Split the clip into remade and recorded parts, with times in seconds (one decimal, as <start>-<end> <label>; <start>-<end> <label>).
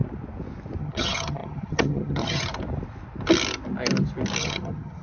0.0-0.8 recorded; 0.8-2.5 remade; 2.5-4.4 recorded; 4.4-5.0 remade